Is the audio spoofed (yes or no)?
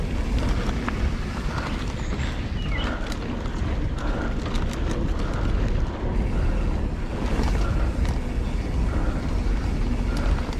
no